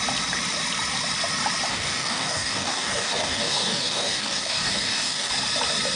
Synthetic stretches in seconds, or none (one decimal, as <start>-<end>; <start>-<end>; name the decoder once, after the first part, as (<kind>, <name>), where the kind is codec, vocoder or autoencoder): 1.7-5.3 (codec, DAC)